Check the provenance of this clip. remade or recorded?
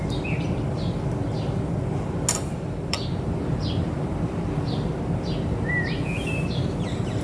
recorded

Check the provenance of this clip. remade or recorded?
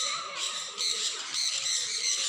remade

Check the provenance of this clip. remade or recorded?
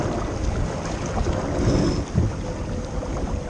recorded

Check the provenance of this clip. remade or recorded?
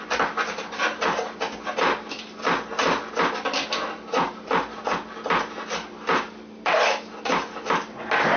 recorded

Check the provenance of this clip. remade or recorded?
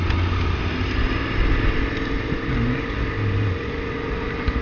recorded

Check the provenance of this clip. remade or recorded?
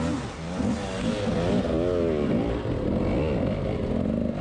recorded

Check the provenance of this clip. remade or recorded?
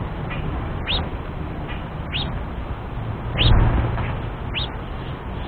recorded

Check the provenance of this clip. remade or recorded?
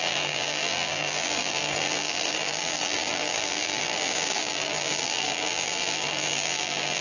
remade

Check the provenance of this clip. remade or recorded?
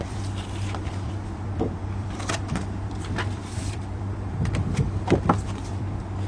remade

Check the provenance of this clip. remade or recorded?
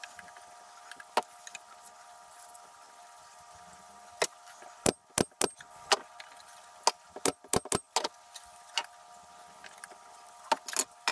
recorded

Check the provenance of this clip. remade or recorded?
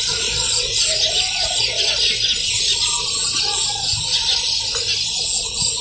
recorded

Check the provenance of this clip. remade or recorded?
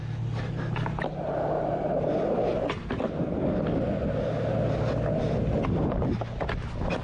recorded